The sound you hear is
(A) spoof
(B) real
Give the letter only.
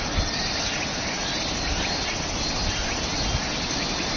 B